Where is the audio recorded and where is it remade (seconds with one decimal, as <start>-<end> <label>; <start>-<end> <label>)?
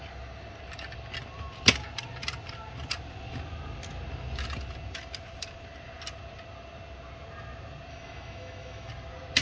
0.0-7.9 recorded; 7.9-8.9 remade; 8.9-9.4 recorded